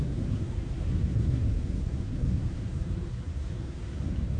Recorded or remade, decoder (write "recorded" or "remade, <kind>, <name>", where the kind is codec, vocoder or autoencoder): remade, codec, SNAC